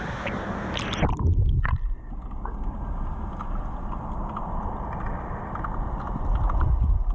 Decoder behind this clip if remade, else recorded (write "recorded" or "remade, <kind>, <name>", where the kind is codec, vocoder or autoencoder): recorded